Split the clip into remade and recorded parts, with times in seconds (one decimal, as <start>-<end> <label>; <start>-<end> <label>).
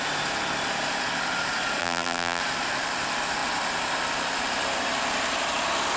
0.0-1.8 recorded; 1.8-2.4 remade; 2.4-6.0 recorded